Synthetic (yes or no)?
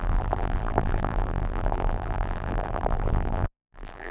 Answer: yes